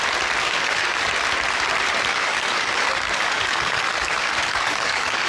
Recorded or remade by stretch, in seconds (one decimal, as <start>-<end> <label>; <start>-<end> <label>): 0.0-0.4 recorded; 0.4-1.1 remade; 1.1-2.1 recorded; 2.1-5.3 remade